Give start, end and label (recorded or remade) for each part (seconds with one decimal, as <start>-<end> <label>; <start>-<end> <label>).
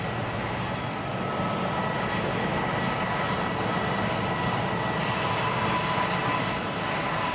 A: 0.0-7.3 recorded